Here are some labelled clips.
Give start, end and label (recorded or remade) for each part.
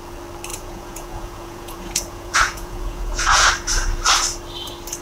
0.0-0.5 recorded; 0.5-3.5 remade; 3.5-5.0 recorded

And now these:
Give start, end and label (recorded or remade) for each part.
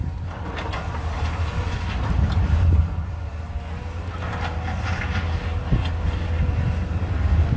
0.0-7.6 recorded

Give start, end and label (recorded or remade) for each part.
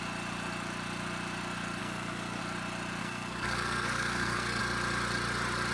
0.0-1.8 recorded; 1.8-2.4 remade; 2.4-3.0 recorded; 3.0-4.6 remade; 4.6-5.7 recorded